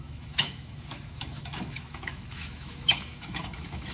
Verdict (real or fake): fake